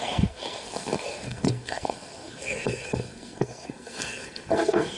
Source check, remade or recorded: remade